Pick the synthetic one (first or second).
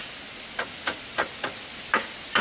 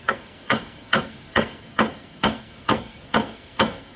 second